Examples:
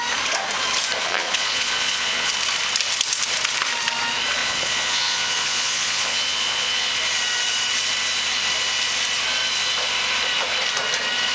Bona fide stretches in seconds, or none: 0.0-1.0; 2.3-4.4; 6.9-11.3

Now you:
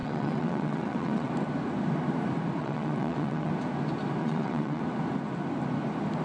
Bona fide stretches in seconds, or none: 1.3-2.6; 3.5-4.2; 4.8-6.2

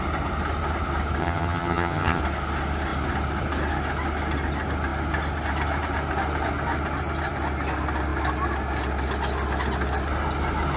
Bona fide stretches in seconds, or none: 0.0-1.2; 2.2-10.8

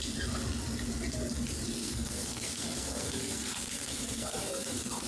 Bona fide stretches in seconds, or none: 0.0-1.8

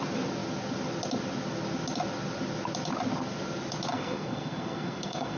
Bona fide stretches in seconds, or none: 0.0-3.9

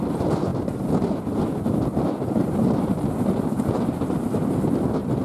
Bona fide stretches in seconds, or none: 0.0-5.2

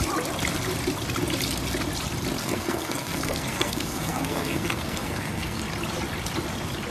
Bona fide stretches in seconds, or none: 0.0-2.4; 5.6-6.9

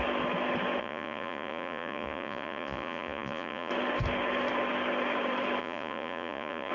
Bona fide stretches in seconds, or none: 0.0-0.8; 3.7-5.6